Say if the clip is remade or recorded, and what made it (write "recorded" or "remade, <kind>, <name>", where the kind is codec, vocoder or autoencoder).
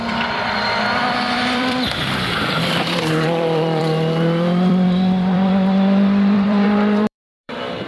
remade, vocoder, BigVGAN v2